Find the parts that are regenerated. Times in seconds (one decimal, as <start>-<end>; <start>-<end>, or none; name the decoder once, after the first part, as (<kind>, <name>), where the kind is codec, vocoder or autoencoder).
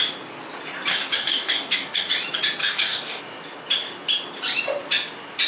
0.9-2.1 (codec, DAC); 2.6-3.2